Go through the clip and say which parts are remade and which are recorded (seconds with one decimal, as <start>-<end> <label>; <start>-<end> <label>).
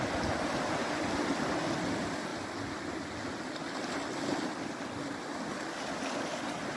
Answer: 0.0-6.8 recorded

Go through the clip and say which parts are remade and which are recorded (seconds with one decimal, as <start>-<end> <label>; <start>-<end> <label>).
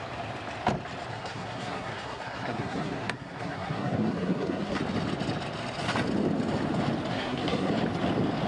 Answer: 0.0-1.1 recorded; 1.1-4.8 remade; 4.8-7.1 recorded; 7.1-7.7 remade; 7.7-8.5 recorded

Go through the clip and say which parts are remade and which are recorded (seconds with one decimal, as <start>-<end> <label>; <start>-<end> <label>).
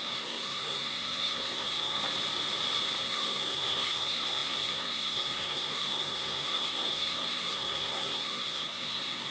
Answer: 0.0-2.0 remade; 2.0-3.0 recorded; 3.0-9.3 remade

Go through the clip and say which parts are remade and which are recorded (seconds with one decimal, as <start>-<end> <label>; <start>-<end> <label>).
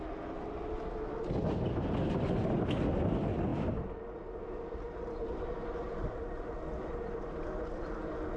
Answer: 0.0-8.4 recorded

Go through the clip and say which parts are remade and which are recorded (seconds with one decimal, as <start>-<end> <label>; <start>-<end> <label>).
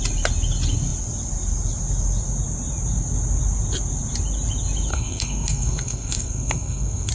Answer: 0.0-4.9 recorded; 4.9-7.1 remade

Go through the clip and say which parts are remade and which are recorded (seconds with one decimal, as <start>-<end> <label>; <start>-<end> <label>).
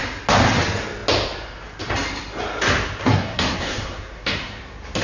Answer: 0.0-3.0 recorded; 3.0-4.6 remade; 4.6-5.0 recorded